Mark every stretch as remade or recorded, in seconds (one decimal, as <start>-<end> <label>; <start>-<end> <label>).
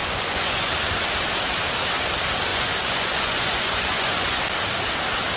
0.0-0.7 remade; 0.7-2.5 recorded; 2.5-4.4 remade; 4.4-5.4 recorded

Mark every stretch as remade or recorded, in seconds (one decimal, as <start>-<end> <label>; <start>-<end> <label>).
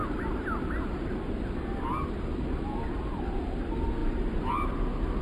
0.0-5.2 recorded